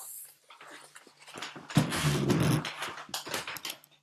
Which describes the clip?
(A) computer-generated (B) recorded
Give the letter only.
B